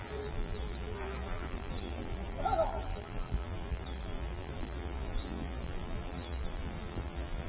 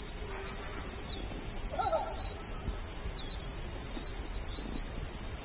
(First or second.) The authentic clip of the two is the second